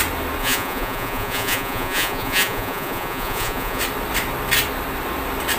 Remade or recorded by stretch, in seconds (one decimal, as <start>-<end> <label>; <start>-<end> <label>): 0.0-0.4 recorded; 0.4-3.8 remade; 3.8-5.6 recorded